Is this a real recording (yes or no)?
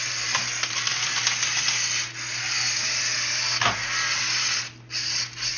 yes